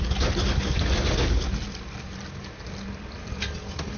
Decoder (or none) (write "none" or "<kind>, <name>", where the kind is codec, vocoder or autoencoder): none